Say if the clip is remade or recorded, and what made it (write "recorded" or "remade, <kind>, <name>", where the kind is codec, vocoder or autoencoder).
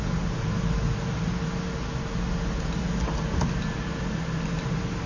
recorded